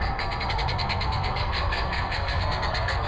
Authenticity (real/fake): fake